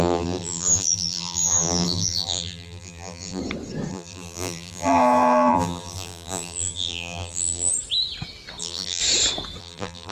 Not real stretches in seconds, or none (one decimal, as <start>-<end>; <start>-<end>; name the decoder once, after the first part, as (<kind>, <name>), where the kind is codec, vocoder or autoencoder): 0.0-3.4 (vocoder, BigVGAN v2); 3.9-7.7; 8.6-9.0; 9.6-10.1